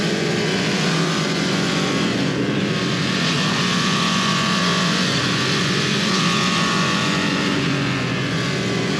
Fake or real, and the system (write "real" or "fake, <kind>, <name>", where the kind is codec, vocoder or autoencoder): fake, vocoder, Vocos